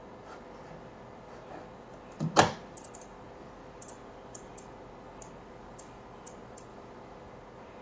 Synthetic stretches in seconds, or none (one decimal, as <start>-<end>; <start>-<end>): none